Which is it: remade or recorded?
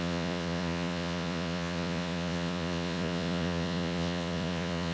remade